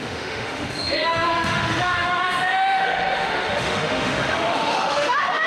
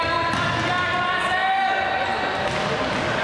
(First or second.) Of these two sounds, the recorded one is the second